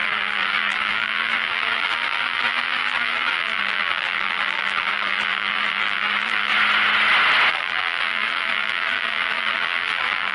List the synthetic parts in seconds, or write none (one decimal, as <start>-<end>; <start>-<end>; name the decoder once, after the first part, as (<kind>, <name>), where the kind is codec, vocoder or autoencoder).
0.0-6.5 (vocoder, BigVGAN v2); 7.5-10.3